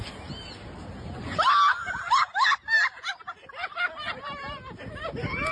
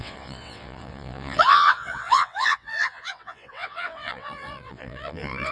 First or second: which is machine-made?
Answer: second